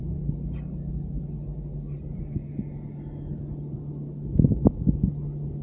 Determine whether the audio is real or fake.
real